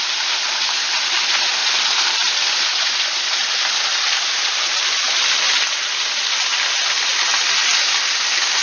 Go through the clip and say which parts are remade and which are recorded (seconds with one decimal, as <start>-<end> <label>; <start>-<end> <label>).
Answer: 0.0-1.6 recorded; 1.6-4.3 remade; 4.3-6.5 recorded; 6.5-7.1 remade; 7.1-8.6 recorded